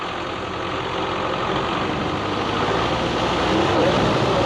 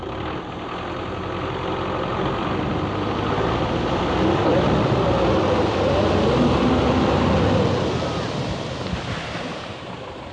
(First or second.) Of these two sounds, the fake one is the second